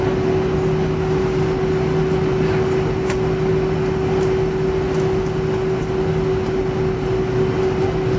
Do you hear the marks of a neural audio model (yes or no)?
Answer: no